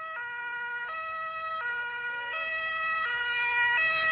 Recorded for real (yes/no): yes